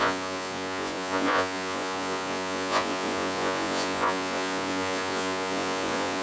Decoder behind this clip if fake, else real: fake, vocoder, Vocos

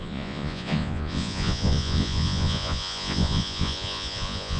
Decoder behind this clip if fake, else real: fake, vocoder, Vocos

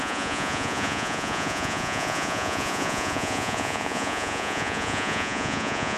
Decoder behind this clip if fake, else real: fake, vocoder, Vocos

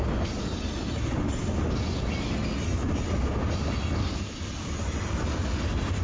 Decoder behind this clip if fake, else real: real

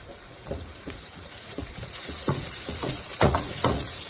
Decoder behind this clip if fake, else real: fake, vocoder, Vocos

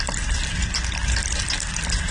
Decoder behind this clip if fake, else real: real